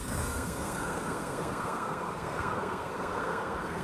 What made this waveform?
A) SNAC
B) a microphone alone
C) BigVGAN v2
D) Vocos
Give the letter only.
A